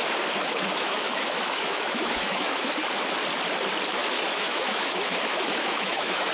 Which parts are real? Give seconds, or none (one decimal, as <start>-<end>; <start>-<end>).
0.0-0.4; 2.7-4.0